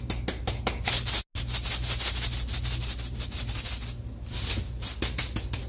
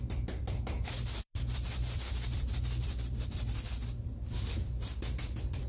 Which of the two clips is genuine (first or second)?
first